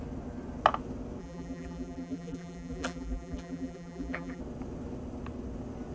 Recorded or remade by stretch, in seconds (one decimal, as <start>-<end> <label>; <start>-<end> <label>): 0.0-1.2 recorded; 1.2-4.4 remade; 4.4-5.9 recorded